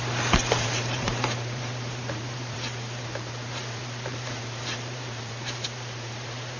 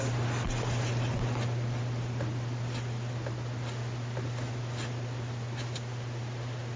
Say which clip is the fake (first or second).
first